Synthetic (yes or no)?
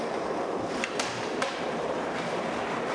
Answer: yes